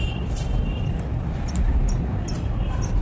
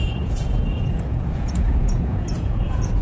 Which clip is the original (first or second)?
first